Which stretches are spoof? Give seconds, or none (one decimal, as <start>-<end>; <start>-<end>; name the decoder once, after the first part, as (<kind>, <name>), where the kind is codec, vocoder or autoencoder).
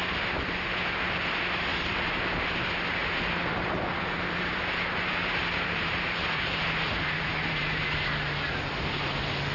1.7-2.4 (vocoder, BigVGAN v2); 3.0-7.8